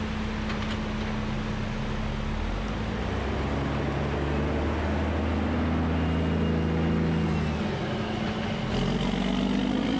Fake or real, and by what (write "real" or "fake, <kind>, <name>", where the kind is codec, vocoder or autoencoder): real